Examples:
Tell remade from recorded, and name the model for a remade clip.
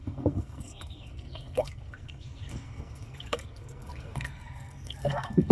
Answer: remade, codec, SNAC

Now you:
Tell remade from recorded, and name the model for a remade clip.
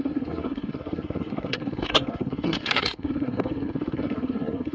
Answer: remade, codec, SNAC